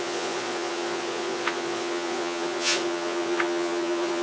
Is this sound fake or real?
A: fake